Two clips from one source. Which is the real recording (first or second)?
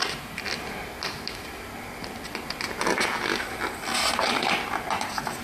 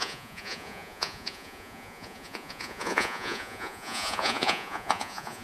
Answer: first